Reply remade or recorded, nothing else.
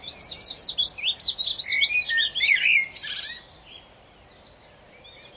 recorded